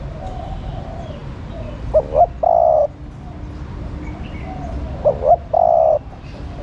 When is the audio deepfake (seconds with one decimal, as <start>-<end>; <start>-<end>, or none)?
none